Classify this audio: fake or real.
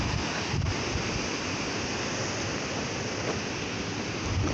real